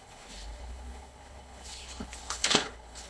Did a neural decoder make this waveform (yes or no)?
yes